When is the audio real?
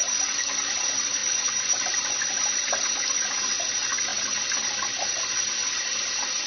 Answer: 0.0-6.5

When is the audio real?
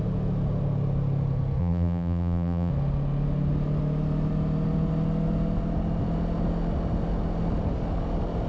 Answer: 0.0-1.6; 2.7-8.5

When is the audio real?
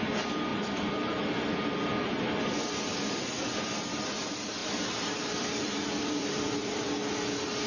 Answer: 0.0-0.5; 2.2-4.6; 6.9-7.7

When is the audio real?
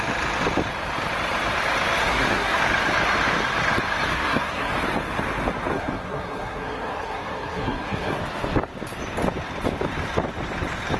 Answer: 0.0-2.0; 2.6-4.1; 4.7-5.7; 8.2-11.0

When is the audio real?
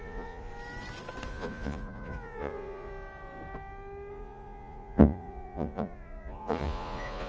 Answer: 0.5-1.3; 2.9-4.1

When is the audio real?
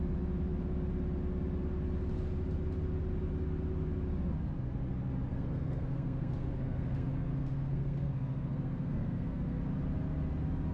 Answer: 0.0-5.3; 9.6-10.7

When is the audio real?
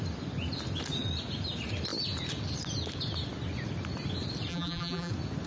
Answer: 0.0-4.5; 5.1-5.5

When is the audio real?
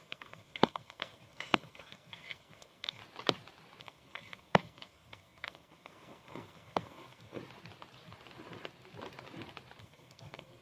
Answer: 3.0-3.8; 7.4-9.8